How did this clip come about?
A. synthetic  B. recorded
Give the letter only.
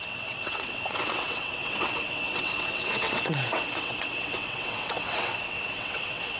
A